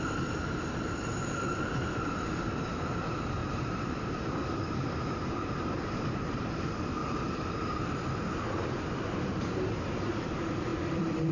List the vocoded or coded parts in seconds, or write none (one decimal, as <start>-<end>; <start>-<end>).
0.0-11.3